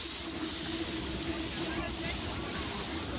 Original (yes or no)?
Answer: yes